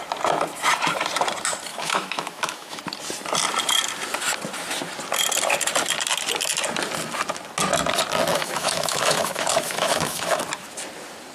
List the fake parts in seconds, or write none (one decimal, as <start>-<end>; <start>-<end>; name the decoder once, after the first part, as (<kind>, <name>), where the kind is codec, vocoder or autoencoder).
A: 1.7-2.8 (autoencoder, DAC-VAE); 8.3-10.4